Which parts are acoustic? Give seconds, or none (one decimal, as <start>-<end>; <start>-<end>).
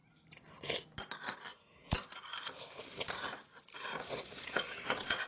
0.0-3.9